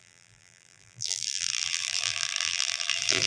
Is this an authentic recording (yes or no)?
no